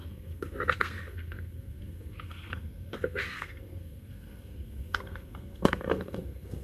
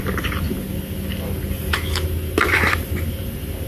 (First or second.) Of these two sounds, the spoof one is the first